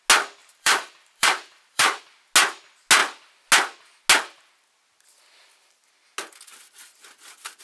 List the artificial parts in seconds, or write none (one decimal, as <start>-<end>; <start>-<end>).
0.4-2.0